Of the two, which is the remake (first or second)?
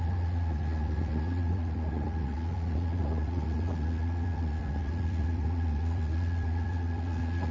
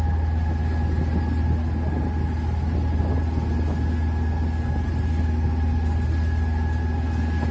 first